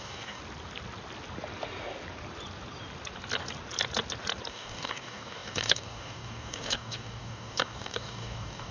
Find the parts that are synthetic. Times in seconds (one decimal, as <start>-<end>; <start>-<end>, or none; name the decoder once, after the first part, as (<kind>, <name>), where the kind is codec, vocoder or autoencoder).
0.0-0.4 (codec, DAC); 4.5-8.7